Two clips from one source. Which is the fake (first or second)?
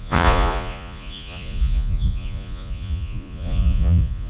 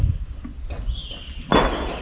first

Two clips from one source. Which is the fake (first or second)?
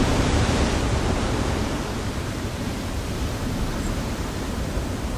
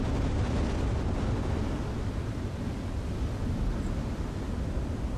first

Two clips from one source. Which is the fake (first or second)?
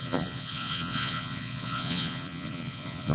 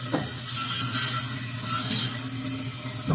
first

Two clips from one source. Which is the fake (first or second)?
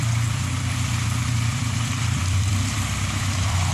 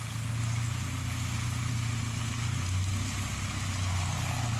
first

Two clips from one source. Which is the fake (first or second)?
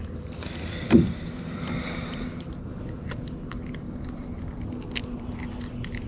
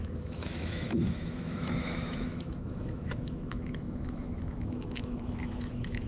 second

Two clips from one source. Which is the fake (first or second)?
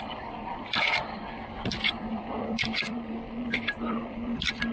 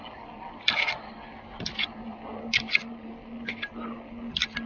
first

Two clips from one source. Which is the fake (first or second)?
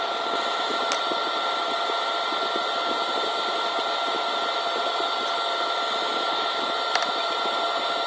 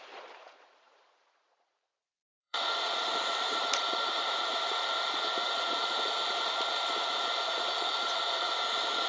second